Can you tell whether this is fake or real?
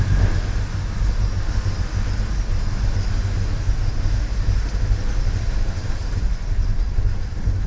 real